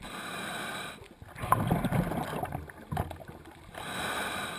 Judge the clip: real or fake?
fake